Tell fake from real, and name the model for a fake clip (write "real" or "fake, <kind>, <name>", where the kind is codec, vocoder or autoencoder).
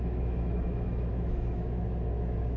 fake, autoencoder, DAC-VAE